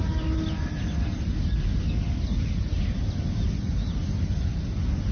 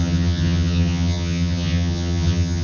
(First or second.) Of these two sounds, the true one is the first